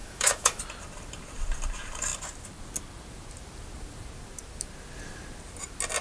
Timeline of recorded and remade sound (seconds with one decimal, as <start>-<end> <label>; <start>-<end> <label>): 0.0-0.6 remade; 0.6-6.0 recorded